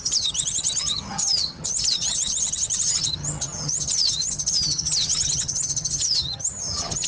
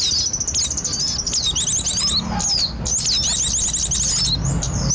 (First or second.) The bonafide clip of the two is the second